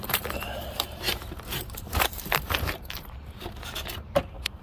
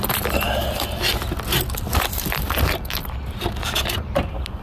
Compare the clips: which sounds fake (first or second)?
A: first